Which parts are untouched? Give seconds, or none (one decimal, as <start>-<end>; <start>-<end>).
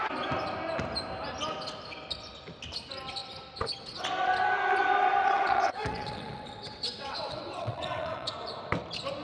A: 0.0-5.2; 8.3-9.2